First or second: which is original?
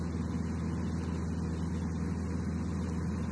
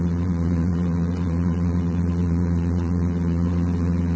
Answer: first